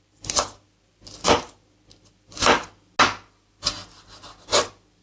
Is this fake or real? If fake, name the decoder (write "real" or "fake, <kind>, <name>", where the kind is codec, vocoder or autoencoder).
real